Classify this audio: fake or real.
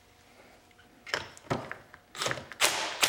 real